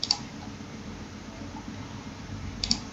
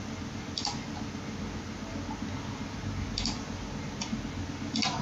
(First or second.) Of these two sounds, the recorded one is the second